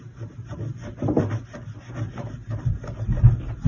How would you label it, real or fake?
real